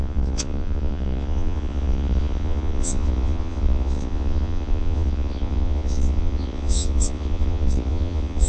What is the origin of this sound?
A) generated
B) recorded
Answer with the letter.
A